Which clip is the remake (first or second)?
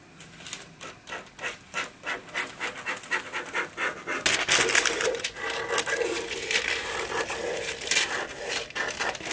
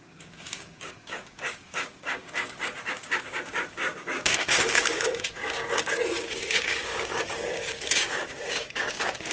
second